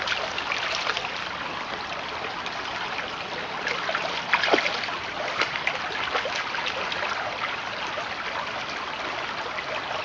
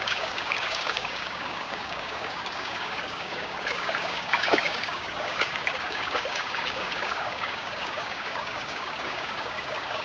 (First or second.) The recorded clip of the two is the first